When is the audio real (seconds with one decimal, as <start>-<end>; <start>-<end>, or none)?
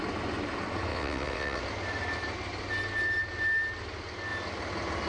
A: 0.0-0.9; 1.6-5.1